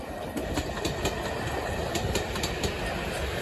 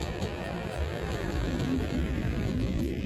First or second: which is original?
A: first